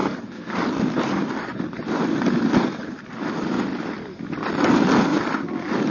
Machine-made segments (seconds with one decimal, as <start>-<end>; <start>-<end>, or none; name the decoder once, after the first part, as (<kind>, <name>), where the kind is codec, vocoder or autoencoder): none